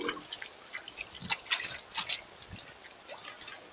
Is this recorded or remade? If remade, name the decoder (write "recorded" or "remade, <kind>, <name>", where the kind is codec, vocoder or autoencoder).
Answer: recorded